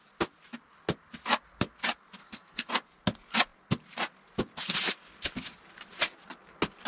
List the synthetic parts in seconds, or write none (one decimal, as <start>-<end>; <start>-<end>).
2.2-2.7